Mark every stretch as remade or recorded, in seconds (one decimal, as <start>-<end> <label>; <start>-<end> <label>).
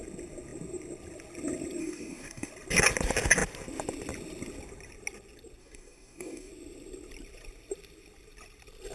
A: 0.0-1.8 recorded; 1.8-2.5 remade; 2.5-5.6 recorded; 5.6-6.5 remade; 6.5-8.9 recorded